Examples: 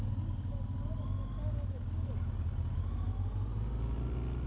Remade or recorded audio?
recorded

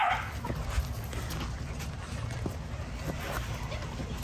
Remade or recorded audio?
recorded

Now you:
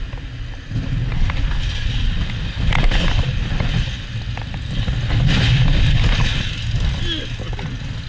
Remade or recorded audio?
recorded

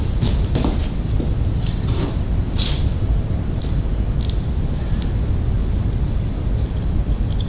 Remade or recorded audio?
recorded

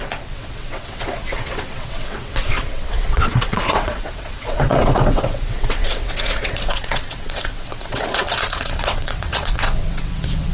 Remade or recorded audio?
remade